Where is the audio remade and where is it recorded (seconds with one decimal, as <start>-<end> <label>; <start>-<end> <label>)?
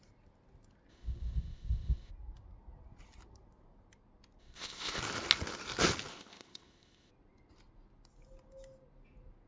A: 0.0-0.9 recorded; 0.9-2.1 remade; 2.1-4.4 recorded; 4.4-5.0 remade; 5.0-6.1 recorded; 6.1-7.1 remade; 7.1-9.5 recorded